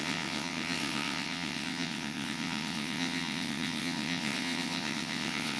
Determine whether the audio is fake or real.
fake